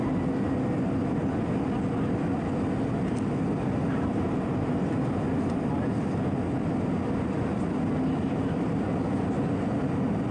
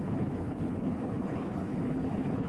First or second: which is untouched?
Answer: first